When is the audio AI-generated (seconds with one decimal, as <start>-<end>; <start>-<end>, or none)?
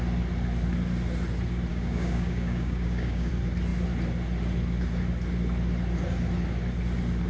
1.7-3.3